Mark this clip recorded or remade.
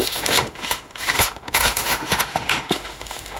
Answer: remade